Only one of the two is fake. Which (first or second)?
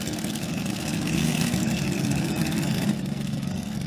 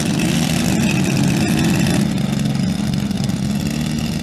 first